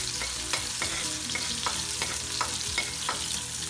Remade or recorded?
recorded